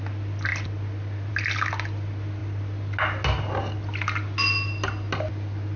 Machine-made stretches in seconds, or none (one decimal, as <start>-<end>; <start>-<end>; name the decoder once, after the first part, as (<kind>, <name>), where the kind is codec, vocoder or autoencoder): none